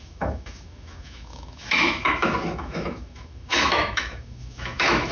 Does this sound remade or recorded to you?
remade